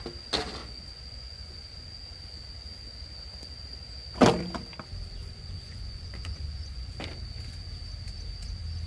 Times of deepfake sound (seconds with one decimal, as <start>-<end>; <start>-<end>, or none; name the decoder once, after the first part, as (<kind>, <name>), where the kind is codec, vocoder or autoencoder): 0.6-1.9 (vocoder, Vocos); 5.2-6.9